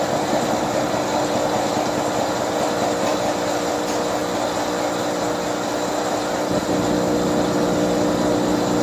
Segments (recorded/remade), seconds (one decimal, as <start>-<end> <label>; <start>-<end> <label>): 0.0-3.1 recorded; 3.1-3.7 remade; 3.7-8.8 recorded